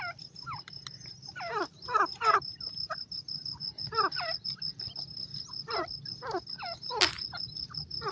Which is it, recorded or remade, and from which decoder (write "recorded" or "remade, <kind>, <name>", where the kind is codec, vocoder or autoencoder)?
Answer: recorded